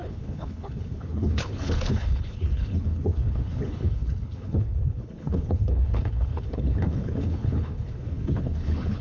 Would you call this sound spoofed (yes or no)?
yes